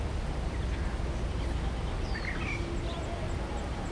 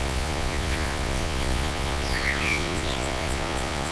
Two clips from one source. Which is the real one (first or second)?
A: first